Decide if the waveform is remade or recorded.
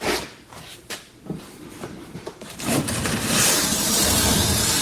remade